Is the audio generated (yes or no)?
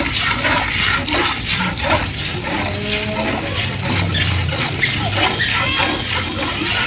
no